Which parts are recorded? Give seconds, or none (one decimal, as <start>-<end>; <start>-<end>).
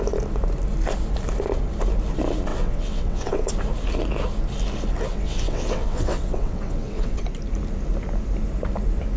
0.0-2.5; 3.5-5.1; 7.2-9.2